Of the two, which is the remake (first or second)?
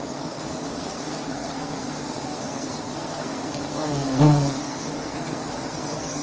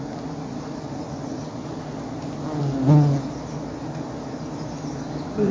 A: first